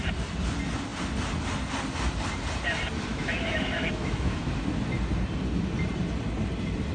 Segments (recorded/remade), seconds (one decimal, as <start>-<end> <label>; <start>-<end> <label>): 0.0-3.1 recorded; 3.1-4.5 remade; 4.5-6.9 recorded